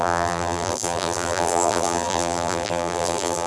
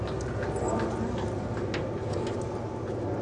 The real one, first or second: second